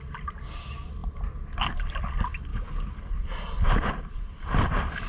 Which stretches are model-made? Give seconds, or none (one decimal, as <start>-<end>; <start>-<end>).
2.5-3.2